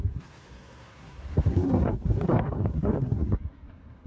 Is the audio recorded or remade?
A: remade